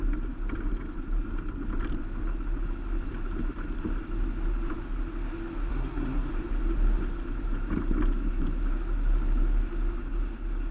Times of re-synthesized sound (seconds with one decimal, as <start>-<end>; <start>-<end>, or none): 5.7-6.3